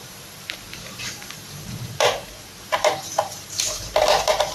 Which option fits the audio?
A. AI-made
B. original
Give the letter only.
A